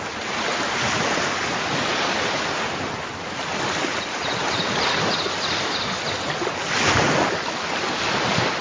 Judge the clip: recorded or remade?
recorded